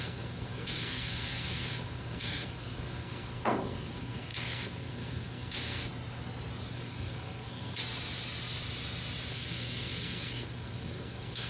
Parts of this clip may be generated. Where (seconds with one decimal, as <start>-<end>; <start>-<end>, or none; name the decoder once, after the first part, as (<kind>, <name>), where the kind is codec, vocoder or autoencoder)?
0.0-5.9 (codec, SNAC); 6.7-7.8; 9.3-11.5